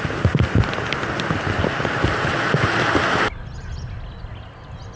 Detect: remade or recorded recorded